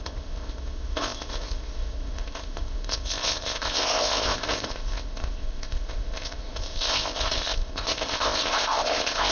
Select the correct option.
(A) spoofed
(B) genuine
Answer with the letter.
A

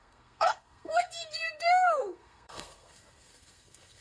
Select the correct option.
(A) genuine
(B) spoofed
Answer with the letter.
B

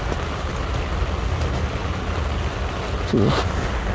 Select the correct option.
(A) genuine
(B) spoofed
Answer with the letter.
A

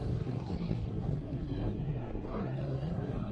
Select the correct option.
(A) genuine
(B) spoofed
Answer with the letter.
B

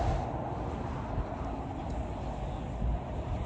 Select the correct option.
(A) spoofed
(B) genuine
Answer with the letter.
B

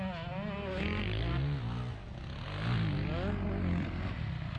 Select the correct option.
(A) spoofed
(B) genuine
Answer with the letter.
B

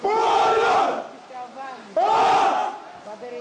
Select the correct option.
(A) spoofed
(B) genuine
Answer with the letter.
B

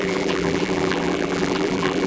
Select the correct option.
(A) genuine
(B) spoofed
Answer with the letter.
B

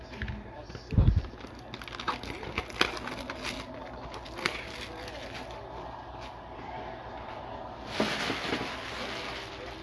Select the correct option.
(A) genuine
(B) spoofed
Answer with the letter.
A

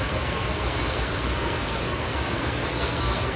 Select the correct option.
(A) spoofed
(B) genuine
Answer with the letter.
A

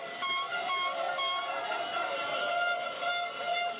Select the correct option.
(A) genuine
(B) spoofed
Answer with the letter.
A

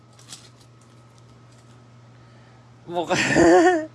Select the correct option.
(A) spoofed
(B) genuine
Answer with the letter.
B